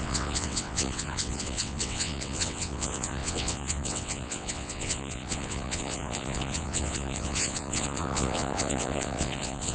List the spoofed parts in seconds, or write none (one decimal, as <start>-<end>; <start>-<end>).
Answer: 0.0-9.7